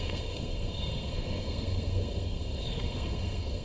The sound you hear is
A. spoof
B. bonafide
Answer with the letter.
A